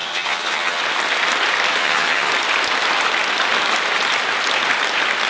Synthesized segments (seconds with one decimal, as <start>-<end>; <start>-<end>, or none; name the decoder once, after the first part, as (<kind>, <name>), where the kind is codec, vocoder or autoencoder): 0.0-0.8 (vocoder, HiFi-GAN); 1.8-2.3